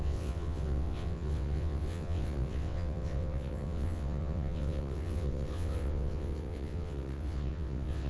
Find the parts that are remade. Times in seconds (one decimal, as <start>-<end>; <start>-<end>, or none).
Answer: 0.0-8.1

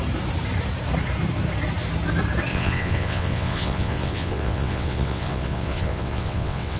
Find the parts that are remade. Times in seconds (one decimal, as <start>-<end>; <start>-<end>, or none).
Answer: 2.5-6.8

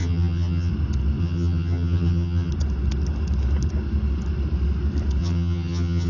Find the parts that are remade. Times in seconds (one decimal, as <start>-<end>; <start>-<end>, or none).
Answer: 0.0-0.7; 1.2-2.5; 5.2-6.1

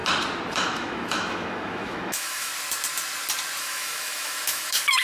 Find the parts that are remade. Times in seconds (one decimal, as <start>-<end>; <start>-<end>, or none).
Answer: 0.6-2.5; 3.6-5.0

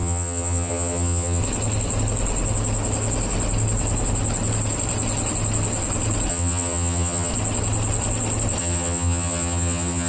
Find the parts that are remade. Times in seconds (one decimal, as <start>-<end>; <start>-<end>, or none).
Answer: 0.0-1.4; 6.3-7.3; 8.6-10.1

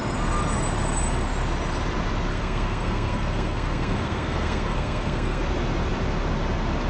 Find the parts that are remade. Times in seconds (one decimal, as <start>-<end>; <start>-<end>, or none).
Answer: 2.3-5.4

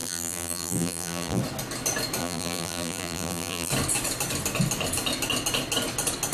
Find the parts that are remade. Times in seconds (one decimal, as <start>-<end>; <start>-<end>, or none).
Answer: 0.0-1.4; 2.2-3.7